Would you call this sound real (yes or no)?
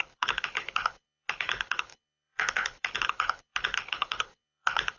no